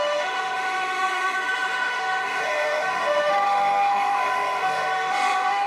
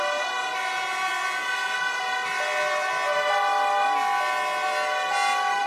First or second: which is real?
second